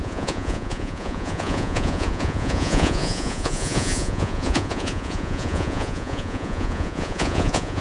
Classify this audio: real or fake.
fake